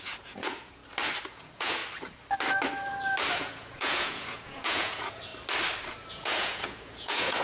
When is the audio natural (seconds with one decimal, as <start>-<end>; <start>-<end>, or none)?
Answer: 0.8-1.3; 1.8-3.3; 5.3-6.1